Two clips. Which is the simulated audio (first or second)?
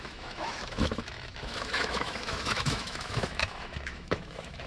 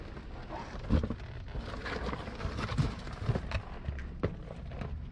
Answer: first